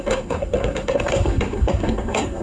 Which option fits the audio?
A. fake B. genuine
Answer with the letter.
A